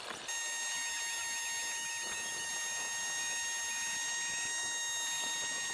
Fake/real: real